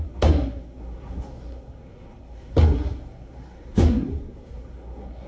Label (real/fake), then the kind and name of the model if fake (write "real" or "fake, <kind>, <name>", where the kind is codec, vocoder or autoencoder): fake, codec, SNAC